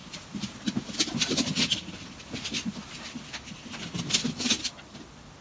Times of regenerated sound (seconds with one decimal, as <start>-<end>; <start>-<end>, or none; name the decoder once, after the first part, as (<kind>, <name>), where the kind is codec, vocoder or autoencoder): none